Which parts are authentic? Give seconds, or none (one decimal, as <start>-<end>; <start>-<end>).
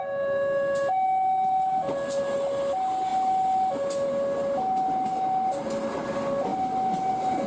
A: 0.0-7.5